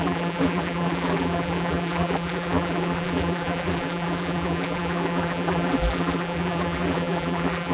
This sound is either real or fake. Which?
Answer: fake